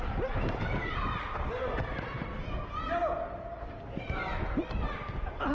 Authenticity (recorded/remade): recorded